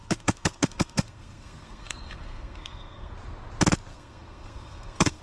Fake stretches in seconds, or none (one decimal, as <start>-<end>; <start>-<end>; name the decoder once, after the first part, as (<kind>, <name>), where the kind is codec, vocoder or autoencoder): 0.0-3.1 (codec, SNAC); 3.9-5.2